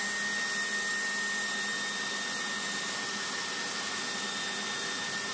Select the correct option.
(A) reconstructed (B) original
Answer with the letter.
B